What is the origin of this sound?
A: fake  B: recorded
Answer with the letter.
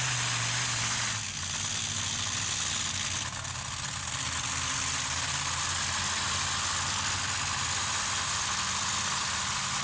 B